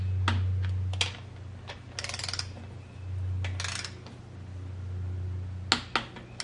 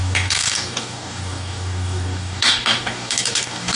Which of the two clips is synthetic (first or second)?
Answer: second